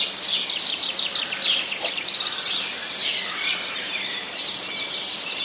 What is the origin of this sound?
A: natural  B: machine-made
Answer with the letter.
B